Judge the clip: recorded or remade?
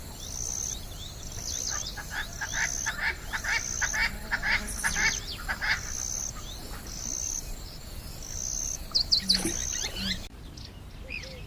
recorded